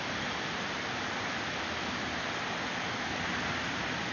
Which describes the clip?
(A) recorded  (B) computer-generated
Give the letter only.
A